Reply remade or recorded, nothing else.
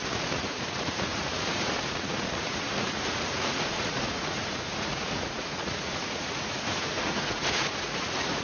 remade